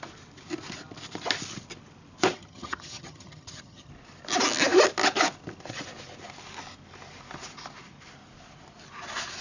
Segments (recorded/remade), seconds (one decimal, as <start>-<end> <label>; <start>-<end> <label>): 0.0-2.3 recorded; 2.3-3.9 remade; 3.9-9.4 recorded